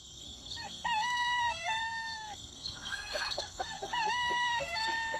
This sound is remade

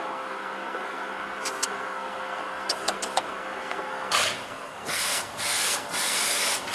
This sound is remade